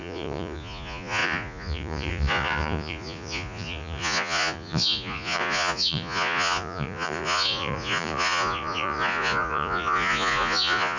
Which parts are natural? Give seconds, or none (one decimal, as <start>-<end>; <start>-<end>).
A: none